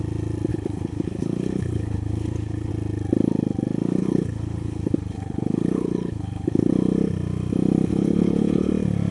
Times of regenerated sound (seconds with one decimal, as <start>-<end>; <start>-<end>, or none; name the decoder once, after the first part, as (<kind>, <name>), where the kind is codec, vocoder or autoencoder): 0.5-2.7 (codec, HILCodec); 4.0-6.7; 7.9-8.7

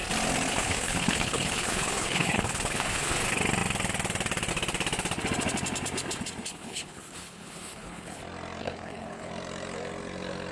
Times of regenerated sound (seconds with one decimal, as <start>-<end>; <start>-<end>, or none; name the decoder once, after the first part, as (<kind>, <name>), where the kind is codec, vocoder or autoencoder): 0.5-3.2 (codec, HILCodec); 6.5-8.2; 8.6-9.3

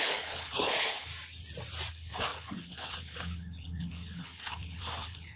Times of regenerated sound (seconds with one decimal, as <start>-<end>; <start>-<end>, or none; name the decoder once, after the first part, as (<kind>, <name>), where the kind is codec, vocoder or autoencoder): 0.0-1.1 (codec, HILCodec); 1.9-5.4

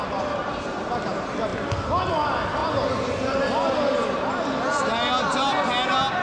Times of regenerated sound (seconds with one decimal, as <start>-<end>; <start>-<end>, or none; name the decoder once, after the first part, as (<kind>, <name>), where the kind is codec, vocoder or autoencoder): none

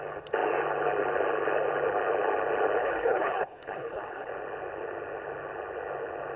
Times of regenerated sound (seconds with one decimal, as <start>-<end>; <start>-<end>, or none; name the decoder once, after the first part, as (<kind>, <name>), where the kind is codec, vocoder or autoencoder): 2.8-4.3 (codec, HILCodec)

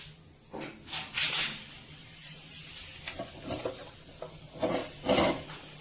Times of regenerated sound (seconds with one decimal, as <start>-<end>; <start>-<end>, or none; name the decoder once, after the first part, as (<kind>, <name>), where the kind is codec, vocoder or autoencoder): none